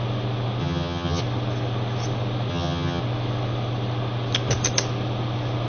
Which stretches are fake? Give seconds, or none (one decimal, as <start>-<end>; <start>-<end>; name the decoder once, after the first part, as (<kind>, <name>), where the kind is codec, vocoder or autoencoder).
0.6-1.2 (vocoder, HiFi-GAN); 2.5-3.0